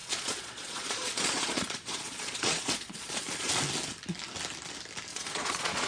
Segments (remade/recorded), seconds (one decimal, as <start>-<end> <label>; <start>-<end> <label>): 0.0-3.5 remade; 3.5-5.1 recorded; 5.1-5.9 remade